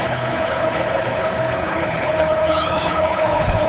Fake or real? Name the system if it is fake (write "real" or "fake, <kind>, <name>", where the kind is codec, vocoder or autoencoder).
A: fake, codec, HILCodec